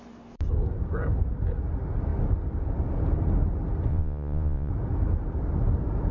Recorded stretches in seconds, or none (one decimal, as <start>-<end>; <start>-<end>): 0.0-3.9; 4.7-6.1